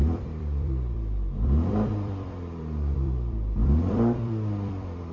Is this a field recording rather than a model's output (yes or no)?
no